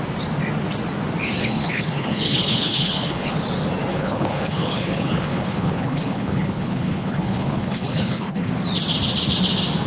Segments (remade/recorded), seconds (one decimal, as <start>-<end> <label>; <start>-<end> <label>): 0.0-1.4 recorded; 1.4-3.4 remade; 3.4-3.9 recorded; 3.9-8.5 remade; 8.5-9.9 recorded